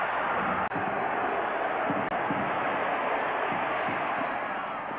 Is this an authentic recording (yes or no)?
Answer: yes